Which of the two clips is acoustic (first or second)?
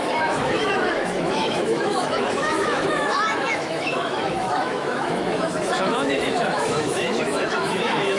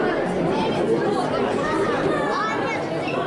second